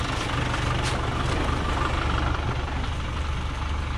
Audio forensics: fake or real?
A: real